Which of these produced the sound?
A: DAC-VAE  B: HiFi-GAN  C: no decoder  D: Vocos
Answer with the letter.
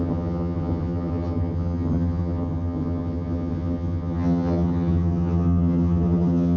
B